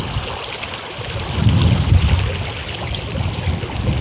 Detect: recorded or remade recorded